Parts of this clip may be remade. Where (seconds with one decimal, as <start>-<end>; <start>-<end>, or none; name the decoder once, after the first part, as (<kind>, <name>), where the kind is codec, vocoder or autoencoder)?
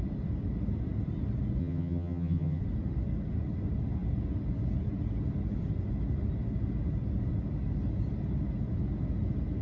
1.6-2.6 (vocoder, HiFi-GAN)